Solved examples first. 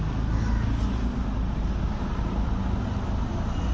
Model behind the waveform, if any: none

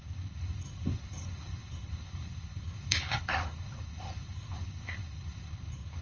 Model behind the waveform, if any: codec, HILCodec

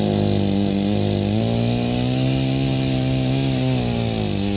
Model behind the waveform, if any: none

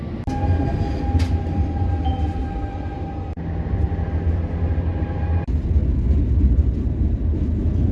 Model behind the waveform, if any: none